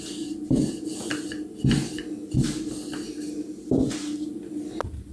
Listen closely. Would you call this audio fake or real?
real